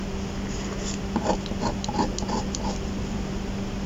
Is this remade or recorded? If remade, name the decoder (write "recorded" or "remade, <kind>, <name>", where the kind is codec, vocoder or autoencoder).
recorded